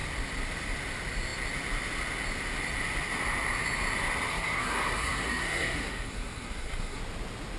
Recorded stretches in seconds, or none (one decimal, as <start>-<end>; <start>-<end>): 0.0-4.3; 7.0-7.6